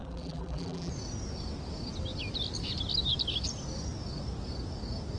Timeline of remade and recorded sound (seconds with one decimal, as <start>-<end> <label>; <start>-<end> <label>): 0.0-0.9 remade; 0.9-5.2 recorded